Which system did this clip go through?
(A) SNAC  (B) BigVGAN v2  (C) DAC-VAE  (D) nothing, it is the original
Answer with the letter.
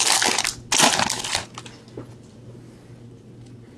D